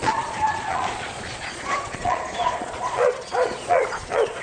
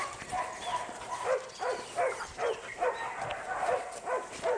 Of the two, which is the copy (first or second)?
first